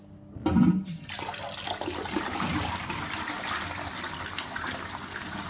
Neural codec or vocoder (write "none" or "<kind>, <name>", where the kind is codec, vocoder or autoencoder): none